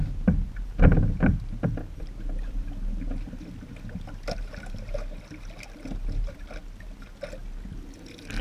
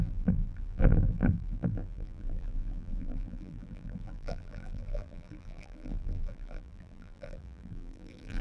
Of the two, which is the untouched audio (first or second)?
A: first